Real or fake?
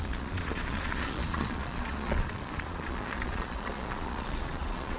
fake